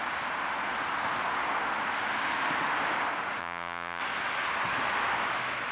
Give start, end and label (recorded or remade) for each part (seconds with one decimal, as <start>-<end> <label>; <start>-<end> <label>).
0.0-3.4 recorded; 3.4-4.0 remade; 4.0-5.7 recorded